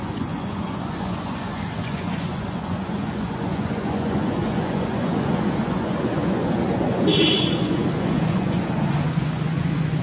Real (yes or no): no